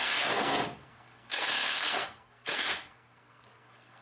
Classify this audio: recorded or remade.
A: remade